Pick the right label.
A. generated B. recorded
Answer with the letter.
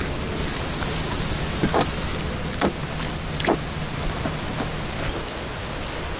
B